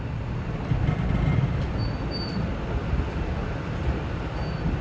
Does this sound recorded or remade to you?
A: recorded